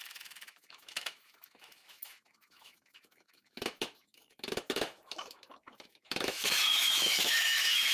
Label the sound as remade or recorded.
remade